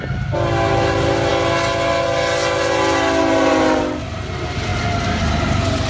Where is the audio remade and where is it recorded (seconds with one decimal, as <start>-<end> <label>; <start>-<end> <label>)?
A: 0.0-5.9 recorded